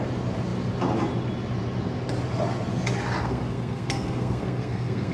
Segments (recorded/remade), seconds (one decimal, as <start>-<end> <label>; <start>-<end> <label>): 0.0-3.2 recorded; 3.2-5.1 remade

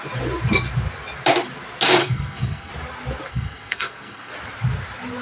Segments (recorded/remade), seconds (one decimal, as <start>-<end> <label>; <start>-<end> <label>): 0.0-2.0 recorded; 2.0-2.7 remade; 2.7-3.3 recorded; 3.3-4.3 remade; 4.3-5.2 recorded

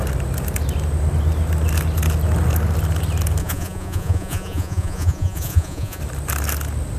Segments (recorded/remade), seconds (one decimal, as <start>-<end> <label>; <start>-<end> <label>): 0.0-3.4 recorded; 3.4-6.0 remade; 6.0-7.0 recorded

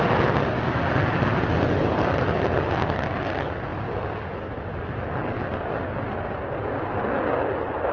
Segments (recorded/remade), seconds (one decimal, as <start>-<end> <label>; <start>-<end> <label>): 0.0-7.9 recorded

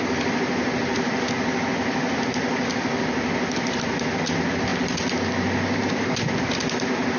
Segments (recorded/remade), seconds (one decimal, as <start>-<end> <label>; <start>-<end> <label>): 0.0-7.2 recorded

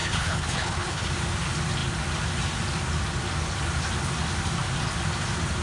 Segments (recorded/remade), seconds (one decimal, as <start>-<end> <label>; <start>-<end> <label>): 0.0-1.1 remade; 1.1-5.6 recorded

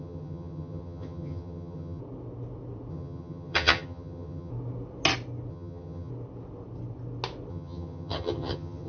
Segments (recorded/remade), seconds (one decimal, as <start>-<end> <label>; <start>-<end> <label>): 0.0-2.0 remade; 2.0-2.9 recorded; 2.9-4.5 remade; 4.5-5.5 recorded; 5.5-6.1 remade; 6.1-7.5 recorded; 7.5-8.9 remade

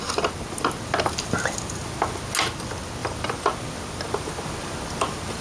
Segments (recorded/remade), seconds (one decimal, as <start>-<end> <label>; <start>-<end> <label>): 0.0-5.4 recorded